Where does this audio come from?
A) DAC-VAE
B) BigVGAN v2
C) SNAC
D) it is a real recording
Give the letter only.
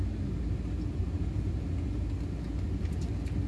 D